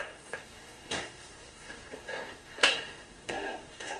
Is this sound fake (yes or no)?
yes